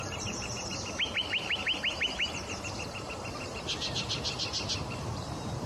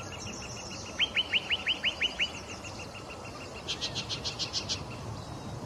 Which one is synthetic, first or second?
first